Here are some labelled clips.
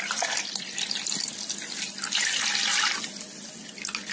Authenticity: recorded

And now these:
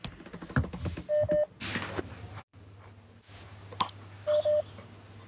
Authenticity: recorded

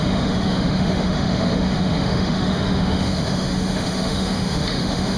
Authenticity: remade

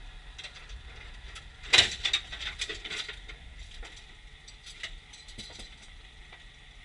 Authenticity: recorded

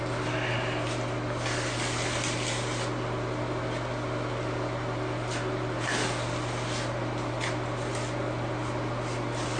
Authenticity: recorded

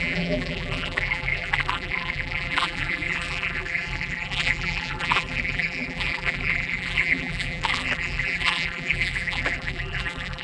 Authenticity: remade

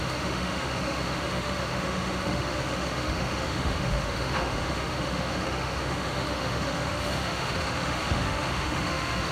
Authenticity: remade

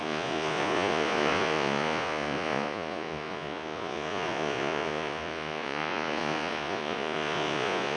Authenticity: remade